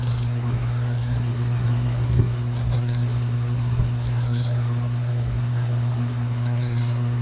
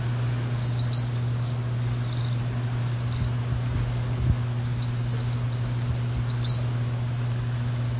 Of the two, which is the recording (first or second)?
second